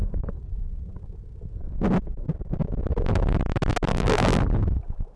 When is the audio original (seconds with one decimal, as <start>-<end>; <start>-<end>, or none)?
0.0-3.9; 4.4-5.2